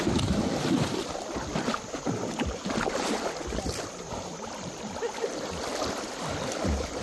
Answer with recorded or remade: remade